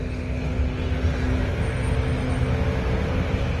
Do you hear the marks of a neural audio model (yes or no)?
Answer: no